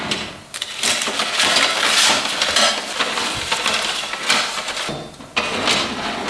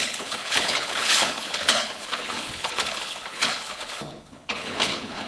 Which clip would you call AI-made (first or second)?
second